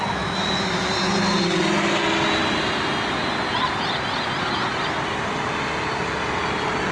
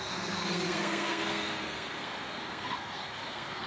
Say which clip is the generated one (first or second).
second